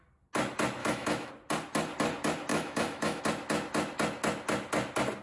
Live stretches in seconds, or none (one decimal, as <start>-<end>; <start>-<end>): 0.0-0.8; 1.3-2.5; 3.2-5.2